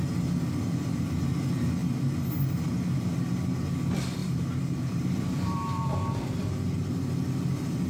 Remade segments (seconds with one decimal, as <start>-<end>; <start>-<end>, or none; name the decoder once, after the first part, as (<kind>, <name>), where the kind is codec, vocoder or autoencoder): 4.2-6.5 (vocoder, BigVGAN v2)

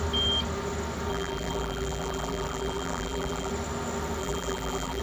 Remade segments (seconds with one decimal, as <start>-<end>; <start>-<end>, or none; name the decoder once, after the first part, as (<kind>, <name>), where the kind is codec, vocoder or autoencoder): 1.1-3.5 (vocoder, BigVGAN v2); 4.2-5.0

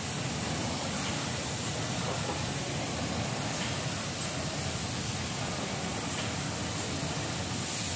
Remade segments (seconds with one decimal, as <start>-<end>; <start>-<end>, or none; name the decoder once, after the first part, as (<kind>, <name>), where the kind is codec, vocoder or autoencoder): 0.6-1.1 (vocoder, BigVGAN v2)

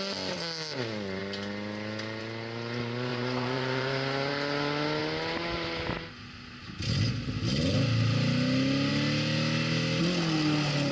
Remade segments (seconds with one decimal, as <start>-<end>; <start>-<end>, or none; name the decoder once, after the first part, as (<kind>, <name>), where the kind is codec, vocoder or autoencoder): 3.1-4.3 (vocoder, BigVGAN v2)